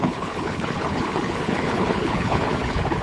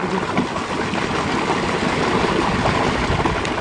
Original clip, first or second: second